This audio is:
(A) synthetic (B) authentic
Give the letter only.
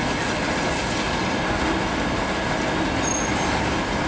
B